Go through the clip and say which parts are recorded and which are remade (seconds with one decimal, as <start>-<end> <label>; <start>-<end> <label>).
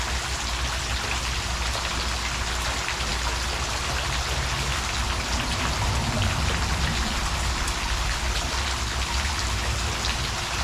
0.0-10.6 recorded